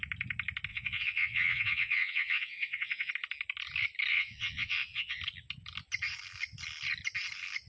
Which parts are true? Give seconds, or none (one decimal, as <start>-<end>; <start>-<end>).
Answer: 0.0-0.7; 3.1-4.1; 5.2-7.7